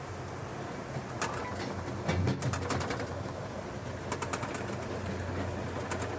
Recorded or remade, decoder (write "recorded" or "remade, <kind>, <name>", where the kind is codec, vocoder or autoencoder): recorded